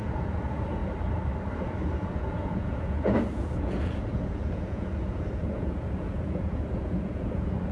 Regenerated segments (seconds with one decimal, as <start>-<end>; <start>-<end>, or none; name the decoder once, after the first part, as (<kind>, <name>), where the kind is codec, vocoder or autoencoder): 0.0-0.8 (vocoder, Vocos); 1.6-7.7